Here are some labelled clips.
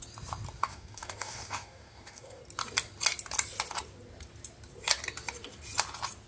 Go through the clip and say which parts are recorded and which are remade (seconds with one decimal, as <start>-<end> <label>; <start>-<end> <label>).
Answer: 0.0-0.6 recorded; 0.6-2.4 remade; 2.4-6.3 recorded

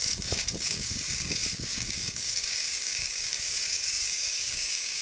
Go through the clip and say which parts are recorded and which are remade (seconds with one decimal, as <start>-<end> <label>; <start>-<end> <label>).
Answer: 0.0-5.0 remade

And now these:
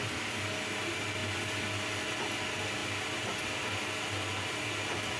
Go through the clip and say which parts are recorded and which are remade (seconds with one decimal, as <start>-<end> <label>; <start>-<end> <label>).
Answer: 0.0-5.2 recorded

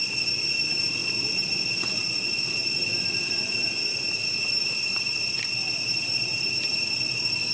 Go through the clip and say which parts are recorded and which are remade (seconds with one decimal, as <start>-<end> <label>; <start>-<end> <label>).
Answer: 0.0-7.5 recorded

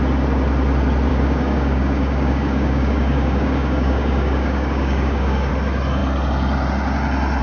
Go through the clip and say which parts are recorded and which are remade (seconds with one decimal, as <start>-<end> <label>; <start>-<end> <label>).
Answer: 0.0-1.1 recorded; 1.1-5.5 remade; 5.5-7.4 recorded

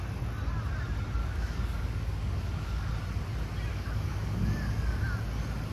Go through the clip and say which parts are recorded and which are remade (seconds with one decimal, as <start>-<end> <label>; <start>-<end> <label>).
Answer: 0.0-1.2 recorded; 1.2-2.9 remade; 2.9-3.7 recorded; 3.7-5.0 remade; 5.0-5.7 recorded